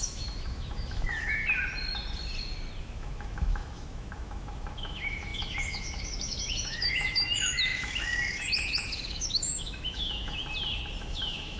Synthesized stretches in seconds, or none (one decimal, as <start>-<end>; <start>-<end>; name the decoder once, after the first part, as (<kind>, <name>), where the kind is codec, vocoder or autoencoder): 0.0-1.4 (autoencoder, DAC-VAE); 2.8-10.4; 11.0-11.6